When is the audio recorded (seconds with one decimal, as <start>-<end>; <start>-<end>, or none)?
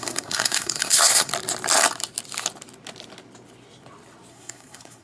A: 1.3-4.3